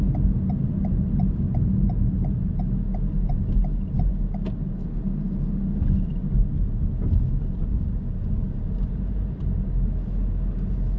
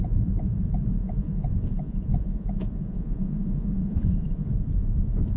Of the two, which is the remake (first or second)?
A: second